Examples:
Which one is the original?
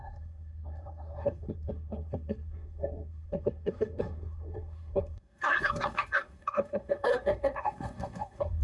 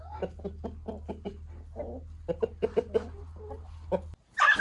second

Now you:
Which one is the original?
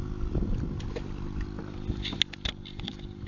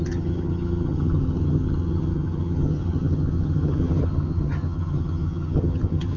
first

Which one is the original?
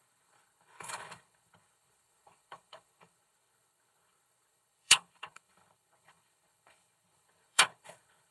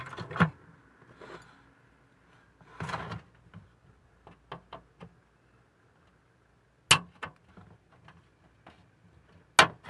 second